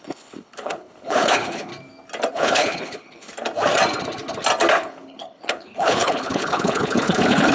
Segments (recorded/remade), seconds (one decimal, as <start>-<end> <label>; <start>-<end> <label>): 0.0-1.7 remade; 1.7-2.3 recorded; 2.3-3.3 remade; 3.3-4.7 recorded; 4.7-7.5 remade